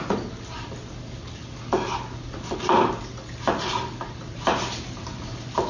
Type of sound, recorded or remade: recorded